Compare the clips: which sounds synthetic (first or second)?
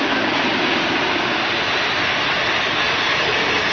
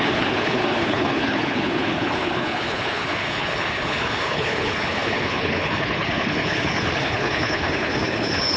second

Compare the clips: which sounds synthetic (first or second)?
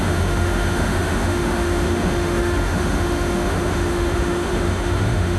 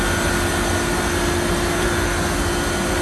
first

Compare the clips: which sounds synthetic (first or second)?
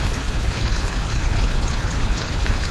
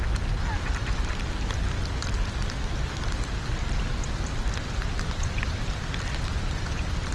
first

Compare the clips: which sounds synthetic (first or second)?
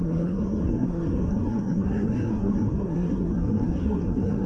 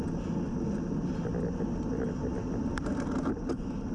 first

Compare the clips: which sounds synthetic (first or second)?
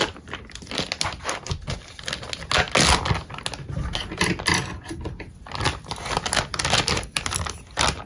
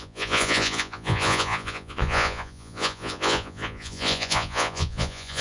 second